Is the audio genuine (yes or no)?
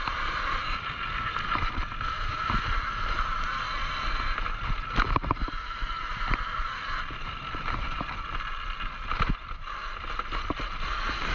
yes